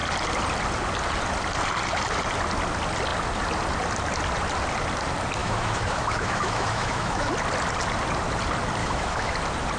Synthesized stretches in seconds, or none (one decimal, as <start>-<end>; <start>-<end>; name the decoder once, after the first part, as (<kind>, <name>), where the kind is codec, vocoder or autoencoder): 5.4-7.3 (autoencoder, DAC-VAE); 8.8-9.3

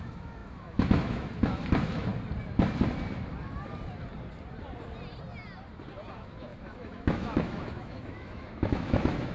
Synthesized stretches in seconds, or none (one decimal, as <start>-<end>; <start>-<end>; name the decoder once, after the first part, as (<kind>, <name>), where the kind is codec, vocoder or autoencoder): 0.0-2.1 (autoencoder, DAC-VAE); 6.1-9.3

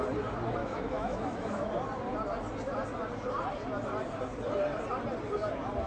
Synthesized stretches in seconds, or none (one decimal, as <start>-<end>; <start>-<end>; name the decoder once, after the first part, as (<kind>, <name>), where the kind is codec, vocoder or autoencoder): 0.6-1.7 (autoencoder, DAC-VAE)

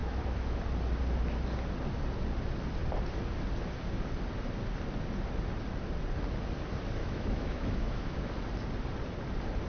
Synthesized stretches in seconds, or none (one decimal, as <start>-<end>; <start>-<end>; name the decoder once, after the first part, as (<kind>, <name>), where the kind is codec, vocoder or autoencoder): 0.0-0.6 (autoencoder, DAC-VAE); 7.0-8.3

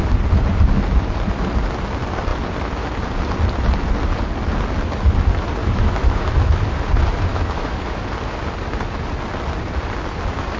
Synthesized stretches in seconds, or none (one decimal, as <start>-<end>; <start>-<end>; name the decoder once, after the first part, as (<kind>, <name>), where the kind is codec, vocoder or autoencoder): 5.6-6.3 (autoencoder, DAC-VAE); 7.3-8.0

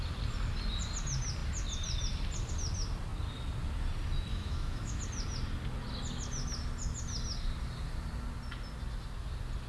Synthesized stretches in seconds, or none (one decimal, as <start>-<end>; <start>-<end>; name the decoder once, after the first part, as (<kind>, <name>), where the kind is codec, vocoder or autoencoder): 4.3-5.0 (autoencoder, DAC-VAE)

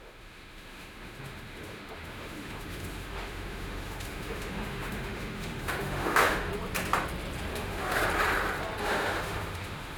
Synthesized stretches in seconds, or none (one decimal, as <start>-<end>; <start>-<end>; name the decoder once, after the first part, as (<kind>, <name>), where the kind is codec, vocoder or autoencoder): 0.0-6.5 (autoencoder, DAC-VAE); 7.5-8.0; 8.8-10.0

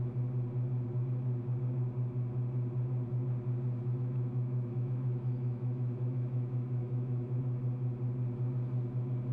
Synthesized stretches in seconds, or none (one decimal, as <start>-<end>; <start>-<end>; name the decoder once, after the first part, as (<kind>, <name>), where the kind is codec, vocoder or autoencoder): 4.0-7.4 (autoencoder, DAC-VAE)